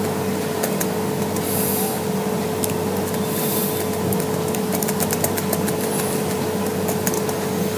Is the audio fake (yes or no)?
no